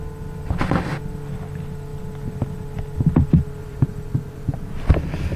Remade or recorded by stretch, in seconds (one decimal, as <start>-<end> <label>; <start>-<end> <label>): 0.0-3.6 recorded; 3.6-4.6 remade; 4.6-5.4 recorded